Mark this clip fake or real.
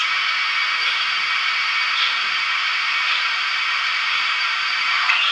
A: fake